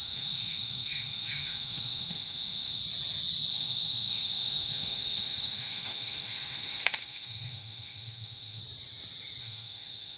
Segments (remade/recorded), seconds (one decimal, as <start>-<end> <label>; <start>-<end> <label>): 0.0-2.8 remade; 2.8-3.5 recorded; 3.5-8.6 remade; 8.6-9.4 recorded; 9.4-10.2 remade